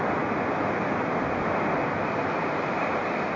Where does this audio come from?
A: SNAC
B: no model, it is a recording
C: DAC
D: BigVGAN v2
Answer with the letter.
B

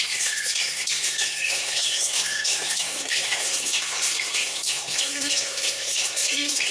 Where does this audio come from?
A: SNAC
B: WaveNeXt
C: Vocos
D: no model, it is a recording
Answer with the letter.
A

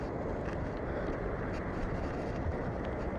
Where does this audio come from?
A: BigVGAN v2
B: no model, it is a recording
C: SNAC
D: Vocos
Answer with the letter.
B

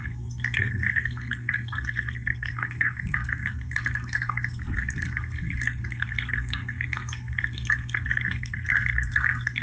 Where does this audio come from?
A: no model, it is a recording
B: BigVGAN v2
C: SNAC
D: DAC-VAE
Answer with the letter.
C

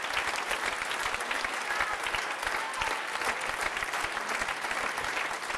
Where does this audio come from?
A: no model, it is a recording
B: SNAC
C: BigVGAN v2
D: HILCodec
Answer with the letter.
A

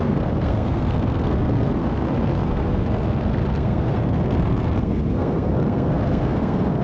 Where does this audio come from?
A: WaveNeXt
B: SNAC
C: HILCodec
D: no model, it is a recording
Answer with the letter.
B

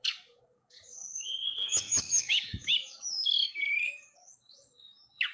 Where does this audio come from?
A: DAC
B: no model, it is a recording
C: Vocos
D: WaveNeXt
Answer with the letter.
A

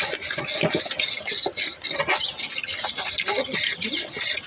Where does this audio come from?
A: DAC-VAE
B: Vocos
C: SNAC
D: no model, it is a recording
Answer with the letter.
D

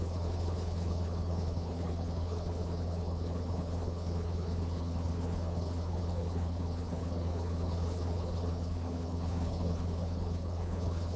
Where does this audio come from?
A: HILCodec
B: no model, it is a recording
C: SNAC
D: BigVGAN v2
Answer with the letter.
A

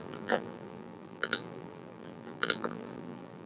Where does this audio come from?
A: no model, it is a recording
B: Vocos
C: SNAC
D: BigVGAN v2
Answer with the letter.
D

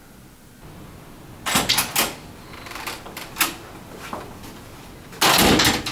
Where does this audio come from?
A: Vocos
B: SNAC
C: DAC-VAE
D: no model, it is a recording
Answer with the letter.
D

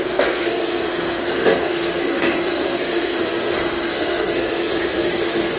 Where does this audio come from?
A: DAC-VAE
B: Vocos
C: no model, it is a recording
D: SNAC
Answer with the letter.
D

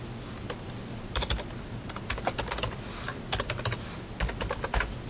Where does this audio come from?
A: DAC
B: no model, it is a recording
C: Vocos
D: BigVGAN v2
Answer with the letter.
B